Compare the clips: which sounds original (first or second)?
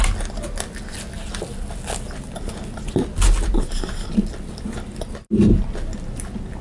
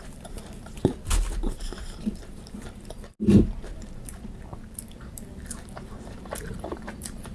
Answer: first